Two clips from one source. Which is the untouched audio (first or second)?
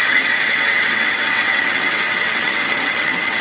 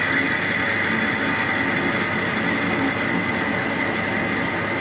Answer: second